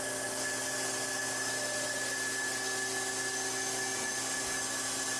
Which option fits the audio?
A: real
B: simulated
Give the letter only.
A